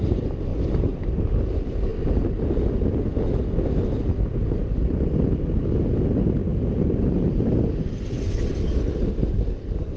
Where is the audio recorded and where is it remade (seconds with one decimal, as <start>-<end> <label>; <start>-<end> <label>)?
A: 0.0-0.5 recorded; 0.5-1.1 remade; 1.1-4.4 recorded; 4.4-4.9 remade; 4.9-6.5 recorded; 6.5-7.4 remade; 7.4-10.0 recorded